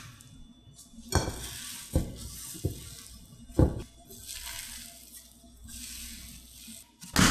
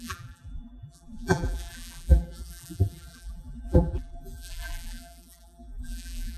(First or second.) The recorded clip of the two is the first